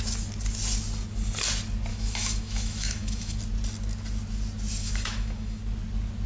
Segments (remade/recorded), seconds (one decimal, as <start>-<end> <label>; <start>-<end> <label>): 0.0-1.9 recorded; 1.9-3.4 remade; 3.4-4.8 recorded; 4.8-5.6 remade; 5.6-6.3 recorded

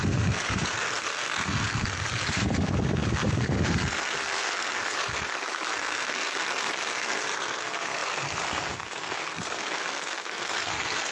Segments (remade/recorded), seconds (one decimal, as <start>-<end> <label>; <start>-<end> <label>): 0.0-11.1 remade

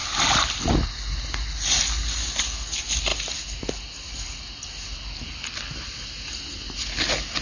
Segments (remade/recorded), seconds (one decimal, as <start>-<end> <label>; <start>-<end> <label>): 0.0-7.4 recorded

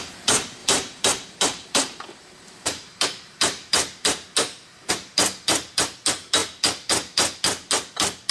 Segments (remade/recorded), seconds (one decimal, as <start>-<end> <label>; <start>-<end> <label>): 0.0-0.6 recorded; 0.6-4.9 remade; 4.9-8.3 recorded

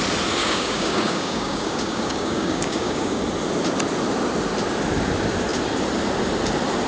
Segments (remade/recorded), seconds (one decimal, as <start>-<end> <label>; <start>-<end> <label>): 0.0-0.4 recorded; 0.4-3.2 remade; 3.2-6.9 recorded

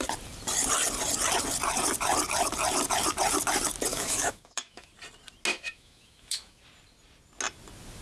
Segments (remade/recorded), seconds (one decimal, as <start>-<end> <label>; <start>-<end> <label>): 0.0-3.9 recorded; 3.9-4.9 remade; 4.9-5.5 recorded; 5.5-6.6 remade; 6.6-8.0 recorded

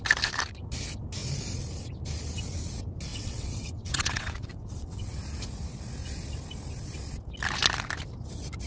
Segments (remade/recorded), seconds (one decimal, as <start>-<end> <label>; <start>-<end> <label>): 0.0-3.1 recorded; 3.1-5.1 remade; 5.1-8.7 recorded